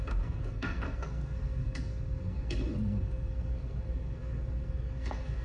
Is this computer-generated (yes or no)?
yes